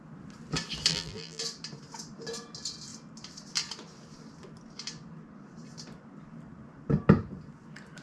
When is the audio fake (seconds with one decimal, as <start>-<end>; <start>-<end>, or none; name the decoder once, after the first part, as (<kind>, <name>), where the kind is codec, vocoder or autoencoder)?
0.9-1.4 (vocoder, BigVGAN v2)